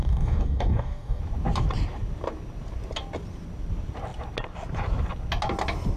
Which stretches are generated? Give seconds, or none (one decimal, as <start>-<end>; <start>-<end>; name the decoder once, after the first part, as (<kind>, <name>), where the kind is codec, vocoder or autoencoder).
0.0-1.2 (codec, DAC)